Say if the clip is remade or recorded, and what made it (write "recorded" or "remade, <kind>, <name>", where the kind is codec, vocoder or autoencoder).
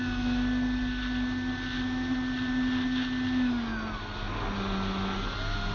recorded